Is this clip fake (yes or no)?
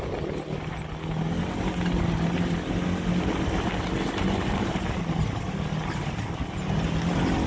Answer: no